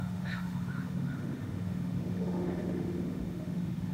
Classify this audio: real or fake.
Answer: fake